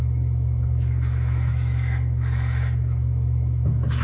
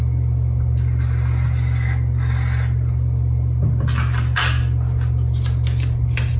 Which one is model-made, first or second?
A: first